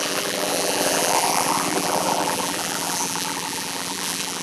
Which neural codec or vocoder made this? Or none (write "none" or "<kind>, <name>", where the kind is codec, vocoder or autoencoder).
vocoder, BigVGAN v2